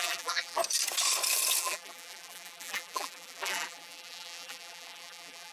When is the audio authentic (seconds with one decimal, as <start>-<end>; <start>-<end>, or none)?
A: 0.6-1.6